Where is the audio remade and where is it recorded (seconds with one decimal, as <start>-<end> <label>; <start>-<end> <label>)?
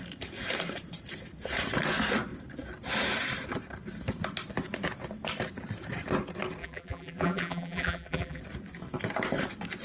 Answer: 0.0-6.6 recorded; 6.6-8.4 remade; 8.4-9.8 recorded